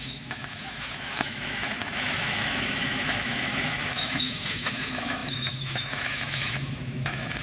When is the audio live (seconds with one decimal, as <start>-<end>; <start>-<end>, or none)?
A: none